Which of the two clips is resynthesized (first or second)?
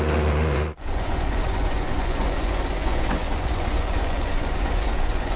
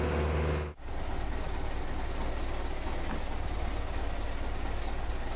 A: first